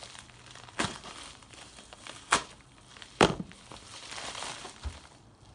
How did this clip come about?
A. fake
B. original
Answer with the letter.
A